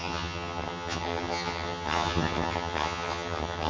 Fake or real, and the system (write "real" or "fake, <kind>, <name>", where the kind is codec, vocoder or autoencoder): fake, vocoder, HiFi-GAN